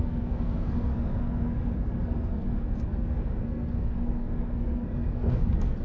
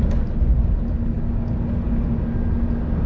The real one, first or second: second